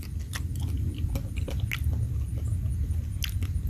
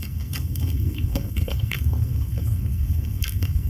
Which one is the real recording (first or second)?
first